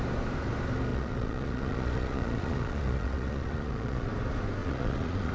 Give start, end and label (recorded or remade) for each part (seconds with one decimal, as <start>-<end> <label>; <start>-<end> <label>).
0.0-0.9 recorded; 0.9-4.1 remade; 4.1-4.6 recorded; 4.6-5.3 remade